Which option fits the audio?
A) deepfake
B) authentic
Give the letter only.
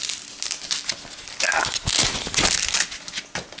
B